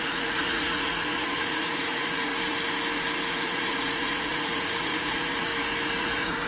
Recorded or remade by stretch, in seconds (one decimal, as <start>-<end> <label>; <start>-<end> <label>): 0.0-2.3 remade; 2.3-3.3 recorded; 3.3-5.5 remade; 5.5-6.0 recorded; 6.0-6.5 remade